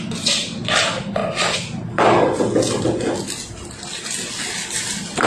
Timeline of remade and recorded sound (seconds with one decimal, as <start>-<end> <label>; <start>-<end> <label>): 0.0-5.3 recorded